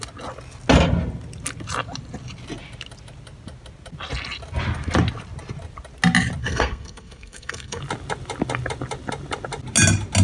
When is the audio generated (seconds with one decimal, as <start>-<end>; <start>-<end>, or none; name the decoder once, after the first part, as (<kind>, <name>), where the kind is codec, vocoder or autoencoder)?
6.4-7.8 (codec, SNAC)